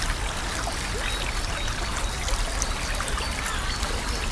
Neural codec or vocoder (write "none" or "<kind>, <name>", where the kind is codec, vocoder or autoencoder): none